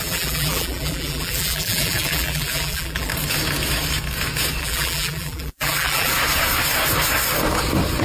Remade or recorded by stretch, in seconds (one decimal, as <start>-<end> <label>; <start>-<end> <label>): 0.0-3.1 remade; 3.1-4.6 recorded; 4.6-6.1 remade; 6.1-8.0 recorded